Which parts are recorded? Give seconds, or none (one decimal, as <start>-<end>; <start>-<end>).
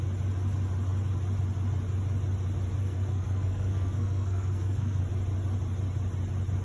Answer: 0.0-2.8; 5.0-6.6